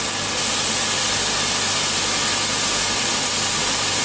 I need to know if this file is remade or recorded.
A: recorded